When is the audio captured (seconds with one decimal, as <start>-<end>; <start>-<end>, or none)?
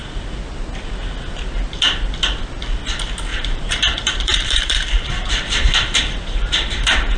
0.0-3.3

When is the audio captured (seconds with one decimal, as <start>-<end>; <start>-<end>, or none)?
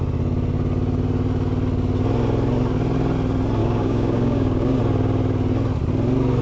0.0-3.6; 4.8-6.4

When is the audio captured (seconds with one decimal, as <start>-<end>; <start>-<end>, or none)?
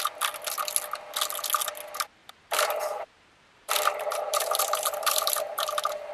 0.0-2.2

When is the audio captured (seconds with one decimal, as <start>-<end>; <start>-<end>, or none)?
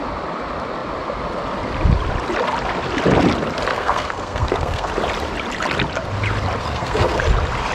0.0-3.7; 4.9-6.6; 7.2-7.7